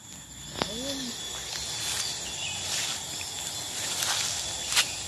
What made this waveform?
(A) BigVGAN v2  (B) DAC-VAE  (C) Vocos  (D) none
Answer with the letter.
D